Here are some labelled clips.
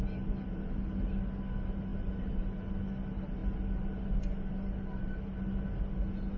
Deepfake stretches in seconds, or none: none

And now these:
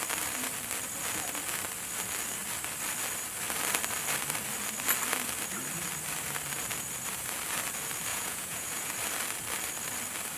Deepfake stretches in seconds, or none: 8.1-8.9 (vocoder, Vocos)

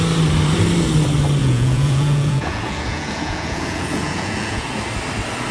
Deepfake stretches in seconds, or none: 1.4-4.7 (vocoder, Vocos)

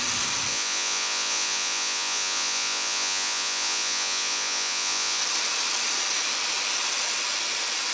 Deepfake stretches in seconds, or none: 0.5-5.2 (vocoder, Vocos)